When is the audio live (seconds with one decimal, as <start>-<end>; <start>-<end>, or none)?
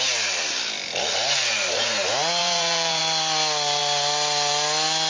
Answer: 0.0-2.4; 3.0-5.1